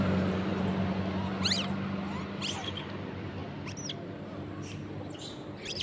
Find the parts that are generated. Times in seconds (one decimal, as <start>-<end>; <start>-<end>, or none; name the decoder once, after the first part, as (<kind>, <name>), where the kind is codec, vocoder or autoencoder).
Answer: none